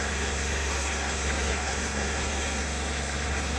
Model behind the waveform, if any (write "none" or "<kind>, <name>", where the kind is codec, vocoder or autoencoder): codec, SNAC